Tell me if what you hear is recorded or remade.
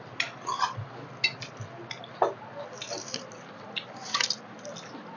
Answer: recorded